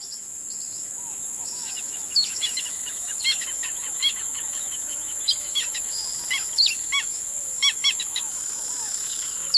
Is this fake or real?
fake